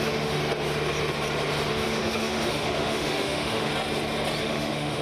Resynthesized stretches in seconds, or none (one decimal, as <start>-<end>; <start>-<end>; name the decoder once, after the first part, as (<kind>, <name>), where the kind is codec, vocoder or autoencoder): 0.0-0.4 (autoencoder, DAC-VAE); 1.7-3.7; 4.4-5.0